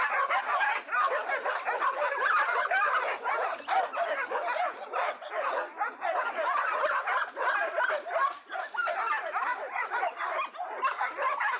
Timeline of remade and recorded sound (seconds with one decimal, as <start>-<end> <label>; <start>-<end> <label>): 0.0-9.5 recorded; 9.5-10.1 remade; 10.1-11.6 recorded